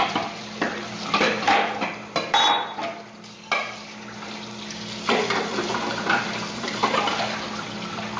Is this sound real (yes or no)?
no